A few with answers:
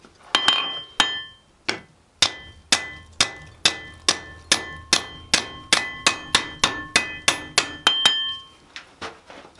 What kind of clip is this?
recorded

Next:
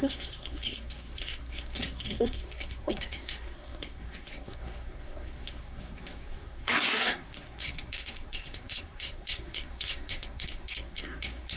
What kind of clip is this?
remade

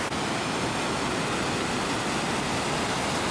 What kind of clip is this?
recorded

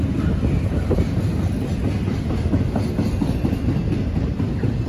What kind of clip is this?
recorded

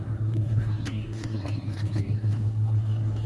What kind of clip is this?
remade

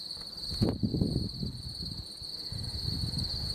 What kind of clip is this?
recorded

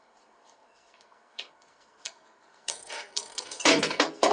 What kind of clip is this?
remade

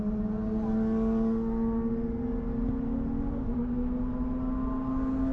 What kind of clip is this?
recorded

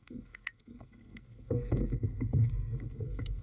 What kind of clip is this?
remade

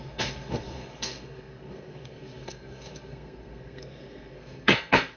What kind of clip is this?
remade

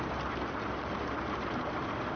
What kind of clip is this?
recorded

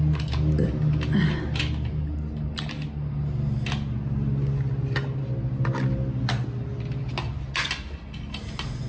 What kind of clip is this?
recorded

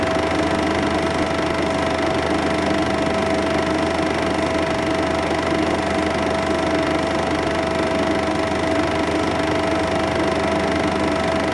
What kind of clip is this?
recorded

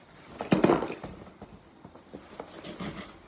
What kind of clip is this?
recorded